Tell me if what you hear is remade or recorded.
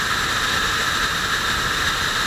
recorded